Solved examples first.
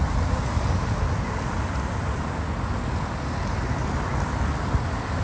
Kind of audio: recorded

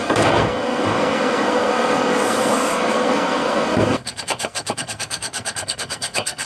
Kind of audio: remade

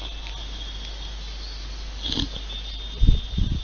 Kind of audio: recorded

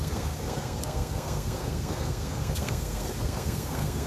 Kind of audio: remade